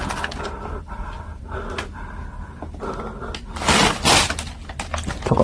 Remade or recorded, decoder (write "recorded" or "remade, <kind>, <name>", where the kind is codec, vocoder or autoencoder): recorded